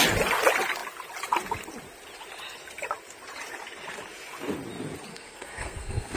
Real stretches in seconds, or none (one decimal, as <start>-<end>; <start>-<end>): 0.0-5.1